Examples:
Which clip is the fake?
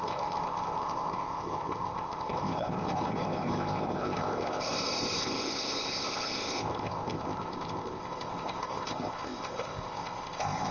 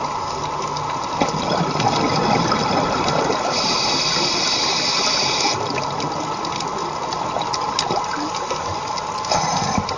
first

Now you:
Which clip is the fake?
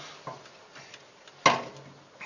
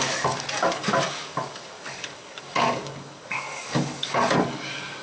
second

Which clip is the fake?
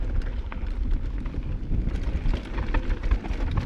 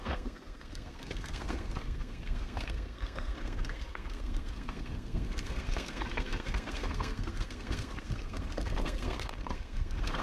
second